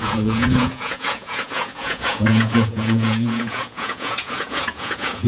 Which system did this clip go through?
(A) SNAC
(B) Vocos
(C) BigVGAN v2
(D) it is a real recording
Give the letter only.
B